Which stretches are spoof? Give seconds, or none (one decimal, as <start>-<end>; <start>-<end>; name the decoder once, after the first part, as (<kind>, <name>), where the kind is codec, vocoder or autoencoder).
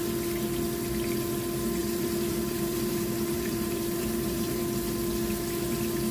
1.8-4.6 (vocoder, BigVGAN v2)